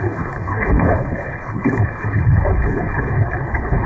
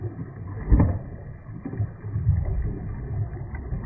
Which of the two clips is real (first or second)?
second